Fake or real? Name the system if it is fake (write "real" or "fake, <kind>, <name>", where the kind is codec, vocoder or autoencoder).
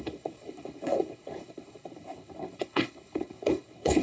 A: fake, codec, HILCodec